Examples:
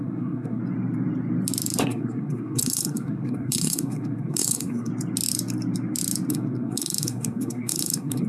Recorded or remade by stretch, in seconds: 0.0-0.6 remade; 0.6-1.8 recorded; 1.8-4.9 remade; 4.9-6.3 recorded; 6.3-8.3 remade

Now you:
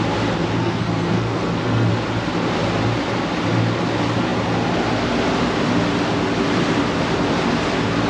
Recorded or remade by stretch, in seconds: 0.0-0.6 recorded; 0.6-1.9 remade; 1.9-8.1 recorded

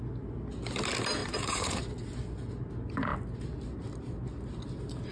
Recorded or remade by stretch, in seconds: 0.0-1.2 recorded; 1.2-1.8 remade; 1.8-5.1 recorded

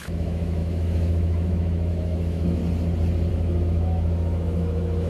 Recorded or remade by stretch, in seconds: 0.0-2.6 remade; 2.6-3.3 recorded; 3.3-5.1 remade

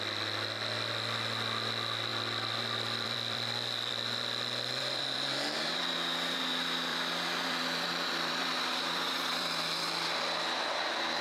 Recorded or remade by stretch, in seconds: 0.0-2.1 recorded; 2.1-6.4 remade; 6.4-6.9 recorded; 6.9-10.2 remade; 10.2-11.2 recorded

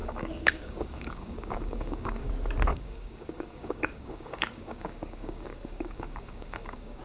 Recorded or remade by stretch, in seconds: 0.0-2.3 remade; 2.3-2.7 recorded; 2.7-7.0 remade

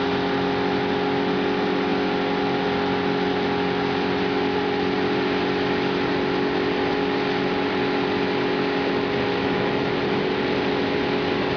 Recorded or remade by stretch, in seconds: 0.0-9.4 recorded; 9.4-10.0 remade; 10.0-11.6 recorded